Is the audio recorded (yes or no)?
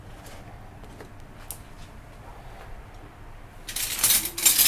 yes